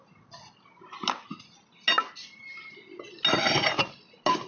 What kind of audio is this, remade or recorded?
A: recorded